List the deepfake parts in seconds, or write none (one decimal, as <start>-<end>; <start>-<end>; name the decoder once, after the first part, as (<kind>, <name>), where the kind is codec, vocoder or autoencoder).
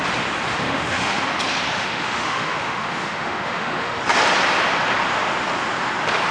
0.5-1.2 (autoencoder, DAC-VAE); 1.7-4.0